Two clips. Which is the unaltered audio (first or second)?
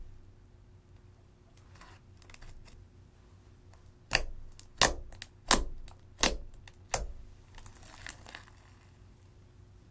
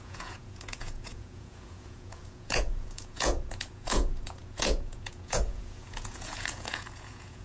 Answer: first